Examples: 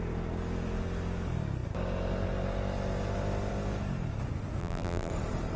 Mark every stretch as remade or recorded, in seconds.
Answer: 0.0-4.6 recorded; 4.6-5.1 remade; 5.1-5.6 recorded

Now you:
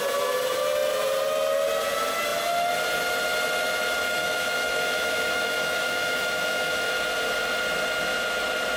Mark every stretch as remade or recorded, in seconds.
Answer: 0.0-4.0 recorded; 4.0-6.9 remade; 6.9-8.8 recorded

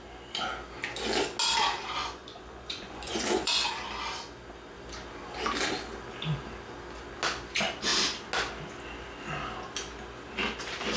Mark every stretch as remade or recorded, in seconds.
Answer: 0.0-2.0 recorded; 2.0-3.7 remade; 3.7-11.0 recorded

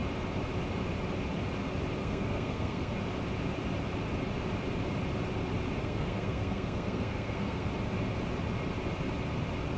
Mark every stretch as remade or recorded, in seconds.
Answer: 0.0-2.0 recorded; 2.0-2.9 remade; 2.9-5.8 recorded; 5.8-7.7 remade; 7.7-9.8 recorded

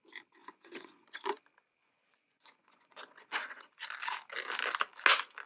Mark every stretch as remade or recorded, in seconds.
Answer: 0.0-0.4 recorded; 0.4-1.4 remade; 1.4-1.8 recorded; 1.8-3.7 remade; 3.7-5.5 recorded